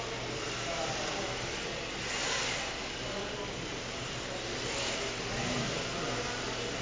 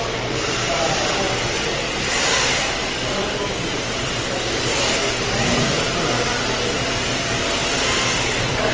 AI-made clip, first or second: second